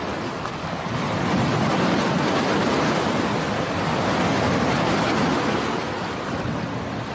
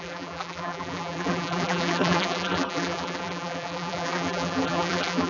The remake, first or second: second